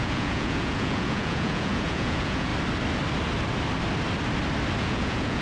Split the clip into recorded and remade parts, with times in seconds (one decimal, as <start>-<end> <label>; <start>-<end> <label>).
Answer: 0.0-2.5 remade; 2.5-4.8 recorded; 4.8-5.4 remade